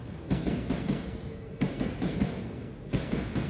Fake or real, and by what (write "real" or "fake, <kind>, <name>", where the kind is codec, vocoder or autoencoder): fake, codec, SNAC